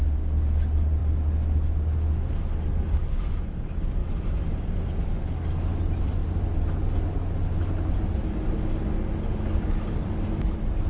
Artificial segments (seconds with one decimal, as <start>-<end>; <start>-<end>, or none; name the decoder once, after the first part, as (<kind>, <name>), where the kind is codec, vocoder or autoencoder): none